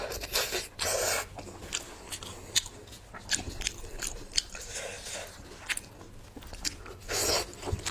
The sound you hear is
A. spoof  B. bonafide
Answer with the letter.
B